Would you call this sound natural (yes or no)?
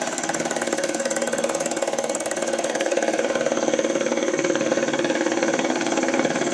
no